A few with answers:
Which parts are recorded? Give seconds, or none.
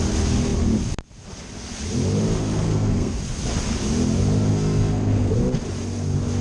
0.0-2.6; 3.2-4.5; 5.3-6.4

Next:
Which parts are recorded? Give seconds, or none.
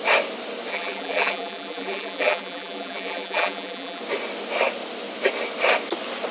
0.0-0.7; 4.0-6.3